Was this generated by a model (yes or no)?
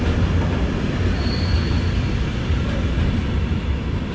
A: no